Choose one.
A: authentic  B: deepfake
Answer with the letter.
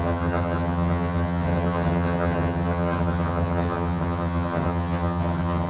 B